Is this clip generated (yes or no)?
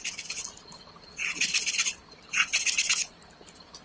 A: no